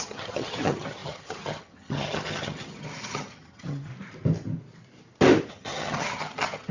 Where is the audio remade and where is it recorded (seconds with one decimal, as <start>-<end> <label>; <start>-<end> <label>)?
0.0-3.9 remade; 3.9-5.5 recorded; 5.5-6.7 remade